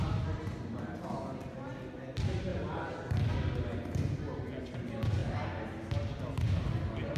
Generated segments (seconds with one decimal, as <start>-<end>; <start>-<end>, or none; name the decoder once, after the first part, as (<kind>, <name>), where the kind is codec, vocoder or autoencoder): none